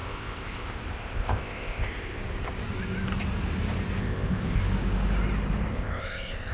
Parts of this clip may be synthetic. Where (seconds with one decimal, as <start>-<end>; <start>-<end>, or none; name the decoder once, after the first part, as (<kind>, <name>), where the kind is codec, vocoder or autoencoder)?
0.0-2.2 (codec, ZipCodec); 4.0-4.6; 5.7-6.5

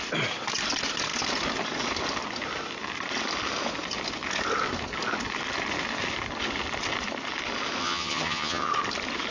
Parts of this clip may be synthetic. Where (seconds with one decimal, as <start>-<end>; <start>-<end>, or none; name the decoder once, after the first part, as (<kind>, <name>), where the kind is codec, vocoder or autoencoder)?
7.8-8.7 (vocoder, HiFi-GAN)

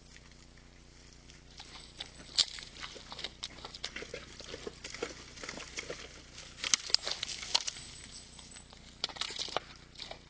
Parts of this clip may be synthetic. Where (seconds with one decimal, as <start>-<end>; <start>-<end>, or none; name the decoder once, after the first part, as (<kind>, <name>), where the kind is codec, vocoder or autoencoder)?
2.4-2.9 (vocoder, BigVGAN v2)